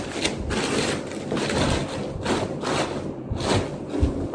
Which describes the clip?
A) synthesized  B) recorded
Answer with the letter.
B